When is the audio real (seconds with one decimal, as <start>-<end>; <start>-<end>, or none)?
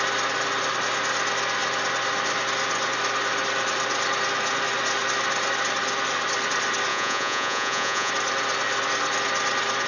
0.0-6.9; 8.1-9.9